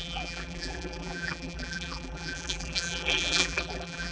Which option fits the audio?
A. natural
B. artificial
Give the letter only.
B